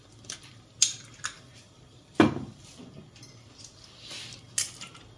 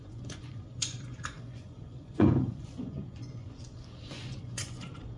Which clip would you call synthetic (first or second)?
second